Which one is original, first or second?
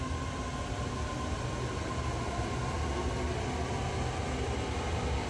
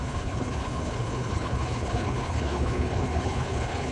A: first